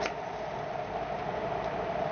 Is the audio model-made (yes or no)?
no